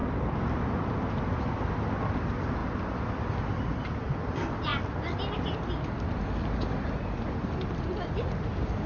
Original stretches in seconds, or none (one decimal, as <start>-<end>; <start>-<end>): 0.0-8.9